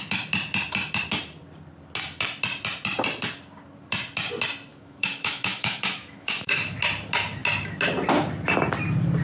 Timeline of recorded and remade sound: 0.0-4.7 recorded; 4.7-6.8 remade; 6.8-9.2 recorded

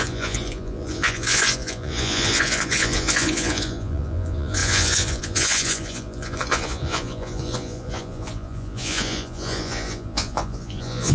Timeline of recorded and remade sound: 0.0-11.1 remade

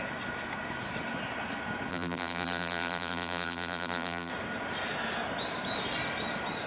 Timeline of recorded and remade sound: 0.0-1.9 recorded; 1.9-4.3 remade; 4.3-6.7 recorded